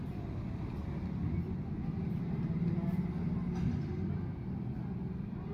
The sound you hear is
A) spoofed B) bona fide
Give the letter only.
B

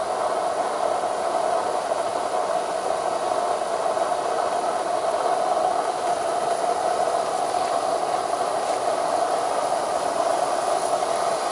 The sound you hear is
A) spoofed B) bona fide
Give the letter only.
B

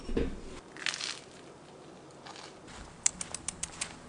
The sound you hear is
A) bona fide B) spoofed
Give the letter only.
A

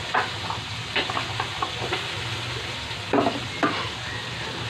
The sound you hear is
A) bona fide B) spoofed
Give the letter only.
A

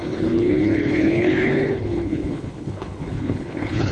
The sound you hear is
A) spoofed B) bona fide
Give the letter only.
A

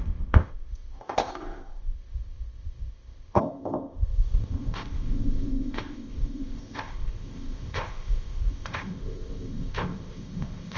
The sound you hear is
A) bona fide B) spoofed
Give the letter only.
B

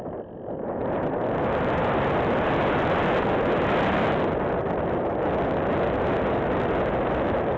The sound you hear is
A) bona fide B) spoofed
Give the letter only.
A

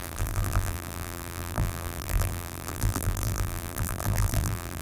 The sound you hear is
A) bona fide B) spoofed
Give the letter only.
B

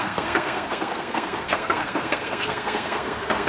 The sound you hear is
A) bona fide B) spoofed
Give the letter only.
B